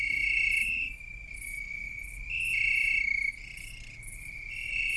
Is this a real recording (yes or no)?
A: yes